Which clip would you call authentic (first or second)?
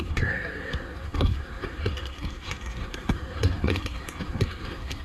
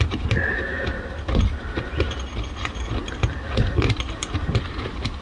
second